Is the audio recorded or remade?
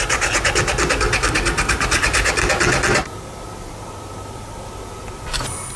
recorded